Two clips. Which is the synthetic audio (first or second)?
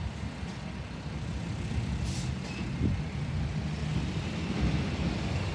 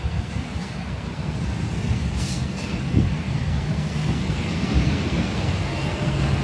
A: second